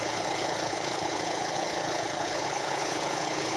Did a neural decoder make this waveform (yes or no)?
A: yes